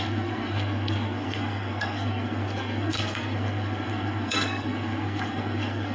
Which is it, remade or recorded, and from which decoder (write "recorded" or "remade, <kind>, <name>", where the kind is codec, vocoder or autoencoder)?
remade, codec, SNAC